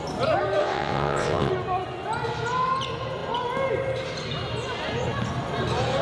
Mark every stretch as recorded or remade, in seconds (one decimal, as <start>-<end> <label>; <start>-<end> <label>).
0.0-0.6 recorded; 0.6-1.5 remade; 1.5-6.0 recorded

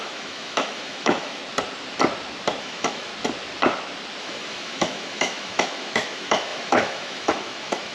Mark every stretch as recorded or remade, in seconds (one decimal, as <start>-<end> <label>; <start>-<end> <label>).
0.0-1.4 remade; 1.4-2.6 recorded; 2.6-3.1 remade; 3.1-4.2 recorded; 4.2-7.9 remade

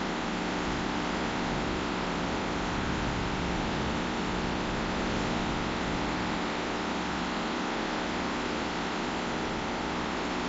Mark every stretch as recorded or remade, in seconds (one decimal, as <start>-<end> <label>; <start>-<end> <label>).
0.0-10.5 recorded